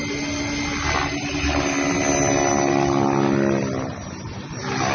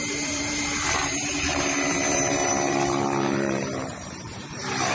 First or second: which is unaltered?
first